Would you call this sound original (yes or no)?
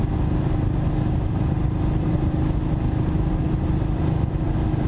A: yes